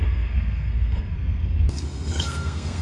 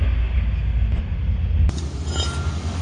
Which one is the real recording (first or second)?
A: second